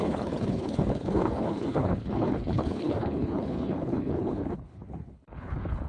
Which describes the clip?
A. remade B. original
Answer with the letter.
A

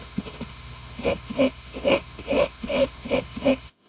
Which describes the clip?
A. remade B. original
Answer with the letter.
A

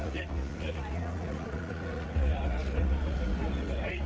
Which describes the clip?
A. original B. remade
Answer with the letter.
B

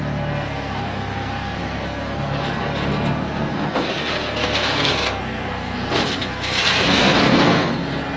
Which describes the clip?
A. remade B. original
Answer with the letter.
A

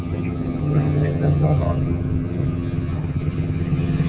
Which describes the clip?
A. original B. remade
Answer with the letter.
B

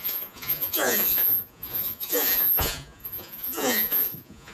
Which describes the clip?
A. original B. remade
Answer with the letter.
B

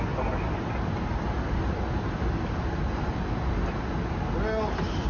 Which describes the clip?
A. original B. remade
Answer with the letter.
A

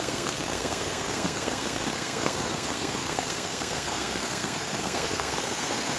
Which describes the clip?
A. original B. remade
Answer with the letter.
B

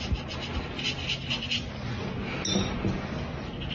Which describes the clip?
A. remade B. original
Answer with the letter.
B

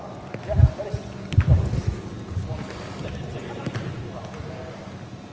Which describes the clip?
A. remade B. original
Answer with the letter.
B